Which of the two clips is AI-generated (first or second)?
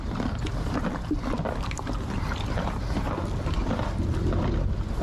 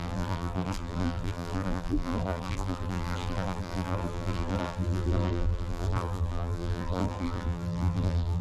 second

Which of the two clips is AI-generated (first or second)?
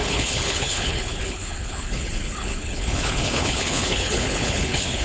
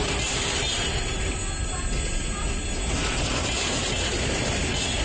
first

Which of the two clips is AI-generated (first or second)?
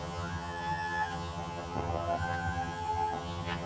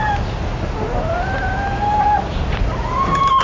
first